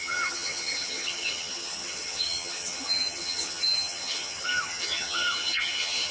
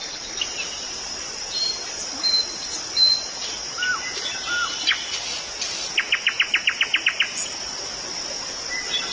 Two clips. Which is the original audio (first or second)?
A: second